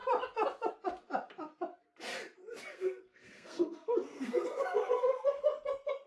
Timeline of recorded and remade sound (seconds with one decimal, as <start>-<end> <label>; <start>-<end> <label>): 0.0-2.7 recorded; 2.7-5.4 remade; 5.4-6.1 recorded